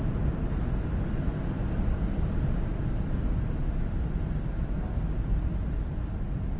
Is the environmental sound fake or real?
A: real